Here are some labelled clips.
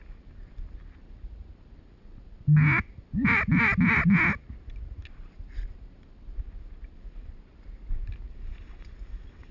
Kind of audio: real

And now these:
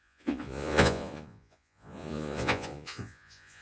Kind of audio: fake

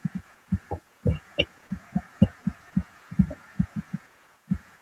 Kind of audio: fake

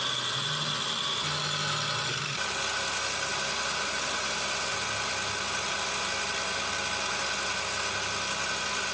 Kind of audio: real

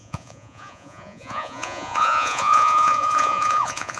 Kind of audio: fake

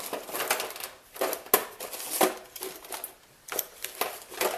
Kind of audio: real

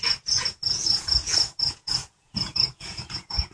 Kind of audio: fake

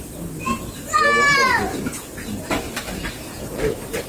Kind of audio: real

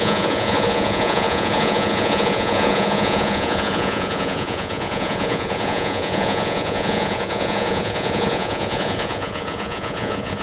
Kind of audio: fake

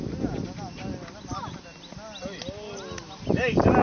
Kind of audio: real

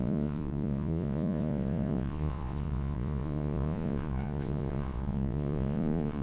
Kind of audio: fake